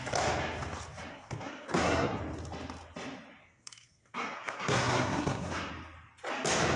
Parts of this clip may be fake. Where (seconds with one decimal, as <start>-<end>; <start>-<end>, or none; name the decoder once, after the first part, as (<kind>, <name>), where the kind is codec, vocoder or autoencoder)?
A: 1.1-2.2 (codec, SNAC); 3.4-5.7